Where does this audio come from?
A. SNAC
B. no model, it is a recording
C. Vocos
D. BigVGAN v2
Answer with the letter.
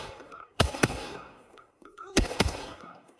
A